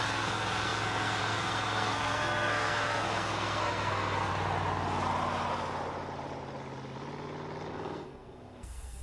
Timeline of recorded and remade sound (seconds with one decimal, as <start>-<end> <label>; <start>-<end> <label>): 0.0-4.3 remade; 4.3-7.7 recorded; 7.7-9.0 remade